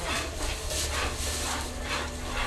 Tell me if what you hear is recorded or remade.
recorded